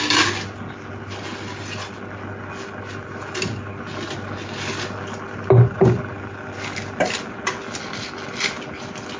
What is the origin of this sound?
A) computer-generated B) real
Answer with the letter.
B